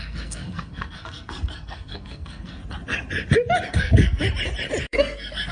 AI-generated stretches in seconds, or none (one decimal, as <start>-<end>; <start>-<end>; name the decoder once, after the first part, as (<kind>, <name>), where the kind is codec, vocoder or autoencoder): 0.0-2.6 (codec, SNAC); 3.7-4.2; 4.8-5.5